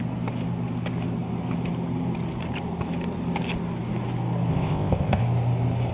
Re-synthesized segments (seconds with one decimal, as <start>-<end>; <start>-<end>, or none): 4.5-5.2